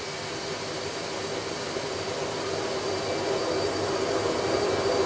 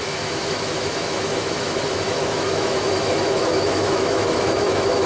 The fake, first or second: second